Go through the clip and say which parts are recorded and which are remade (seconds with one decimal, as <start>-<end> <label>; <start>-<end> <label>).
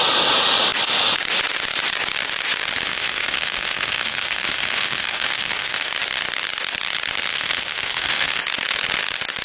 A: 0.0-2.9 recorded; 2.9-5.9 remade; 5.9-7.3 recorded; 7.3-8.4 remade; 8.4-9.4 recorded